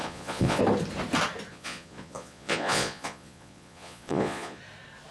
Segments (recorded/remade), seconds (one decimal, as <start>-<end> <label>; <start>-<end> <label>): 0.0-0.6 remade; 0.6-1.5 recorded; 1.5-4.6 remade; 4.6-5.1 recorded